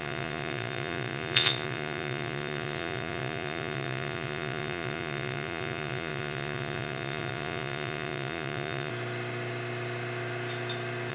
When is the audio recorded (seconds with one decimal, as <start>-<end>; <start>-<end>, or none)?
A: 8.9-11.1